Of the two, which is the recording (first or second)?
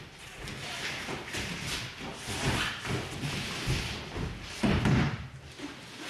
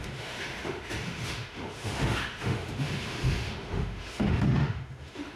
first